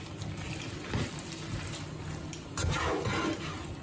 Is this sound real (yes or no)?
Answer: yes